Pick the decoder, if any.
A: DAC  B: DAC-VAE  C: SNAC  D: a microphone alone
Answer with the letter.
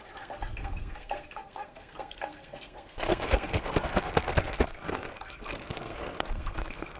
C